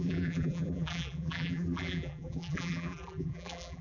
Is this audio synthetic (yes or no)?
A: yes